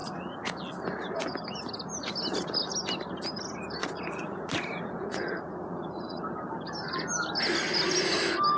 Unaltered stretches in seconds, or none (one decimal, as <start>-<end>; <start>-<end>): 0.5-3.8; 6.2-8.6